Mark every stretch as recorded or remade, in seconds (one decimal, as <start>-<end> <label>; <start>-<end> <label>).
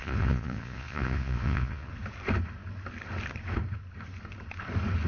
0.0-1.9 remade; 1.9-5.1 recorded